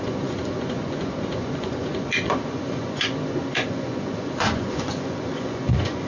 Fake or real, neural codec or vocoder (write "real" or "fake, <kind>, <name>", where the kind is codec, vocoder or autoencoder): fake, vocoder, Vocos